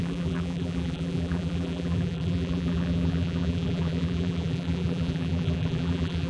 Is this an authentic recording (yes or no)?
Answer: no